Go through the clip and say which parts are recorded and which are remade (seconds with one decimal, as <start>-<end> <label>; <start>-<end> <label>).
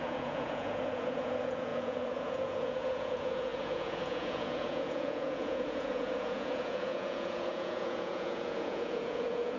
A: 0.0-9.6 remade